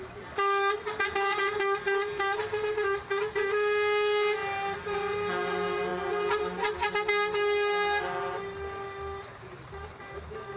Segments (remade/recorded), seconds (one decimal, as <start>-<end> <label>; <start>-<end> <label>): 0.0-4.4 recorded; 4.4-5.0 remade; 5.0-9.3 recorded; 9.3-10.1 remade; 10.1-10.6 recorded